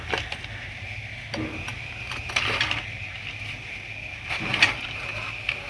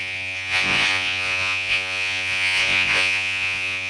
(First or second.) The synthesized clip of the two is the second